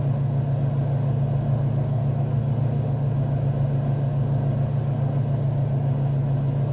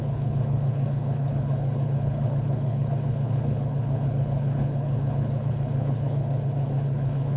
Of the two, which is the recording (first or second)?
first